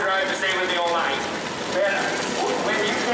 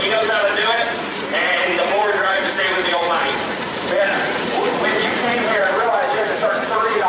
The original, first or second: first